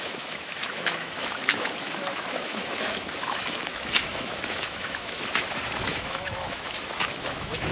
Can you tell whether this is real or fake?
fake